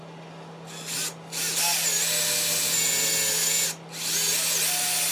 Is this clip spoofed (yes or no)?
no